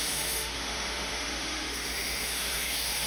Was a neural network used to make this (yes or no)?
yes